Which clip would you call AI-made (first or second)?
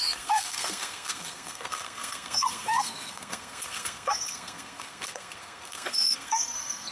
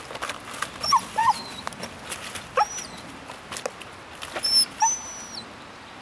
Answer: first